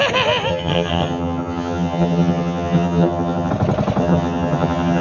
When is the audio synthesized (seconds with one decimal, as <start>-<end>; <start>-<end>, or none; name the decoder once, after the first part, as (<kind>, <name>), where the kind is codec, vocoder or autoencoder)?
0.5-3.5 (vocoder, HiFi-GAN); 4.0-5.0